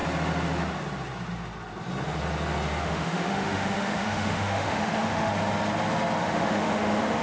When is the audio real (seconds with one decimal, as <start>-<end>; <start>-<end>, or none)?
0.0-2.8; 5.3-6.2

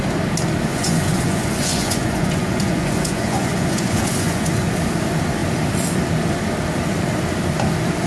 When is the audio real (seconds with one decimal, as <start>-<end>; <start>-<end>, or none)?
0.0-0.7; 4.7-8.1